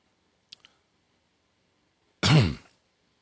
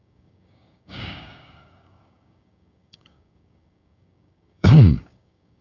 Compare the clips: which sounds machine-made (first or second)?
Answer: second